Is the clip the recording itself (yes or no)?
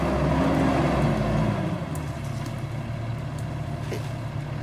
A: yes